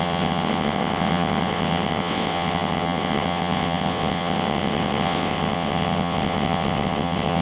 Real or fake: fake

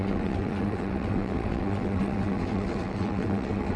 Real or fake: fake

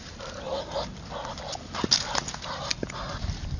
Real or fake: real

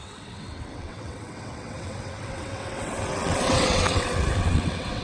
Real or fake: fake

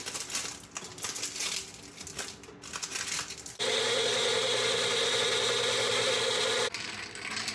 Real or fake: real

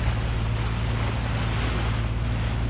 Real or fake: real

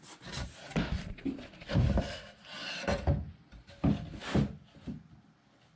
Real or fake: real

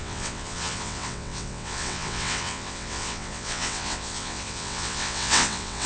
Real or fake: fake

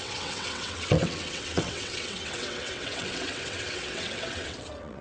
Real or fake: fake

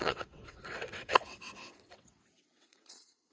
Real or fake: fake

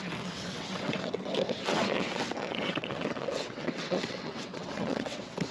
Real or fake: fake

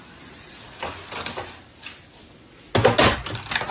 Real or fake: real